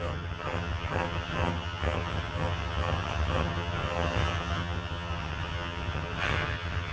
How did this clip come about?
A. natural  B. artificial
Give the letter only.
B